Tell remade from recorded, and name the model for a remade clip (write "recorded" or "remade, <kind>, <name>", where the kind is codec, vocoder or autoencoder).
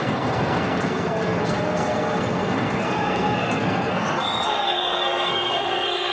remade, codec, SNAC